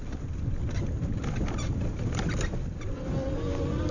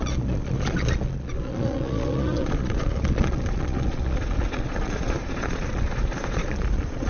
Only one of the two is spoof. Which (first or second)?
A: second